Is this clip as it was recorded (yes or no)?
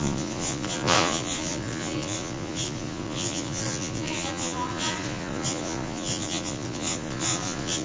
no